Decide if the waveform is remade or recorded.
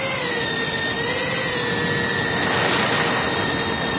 recorded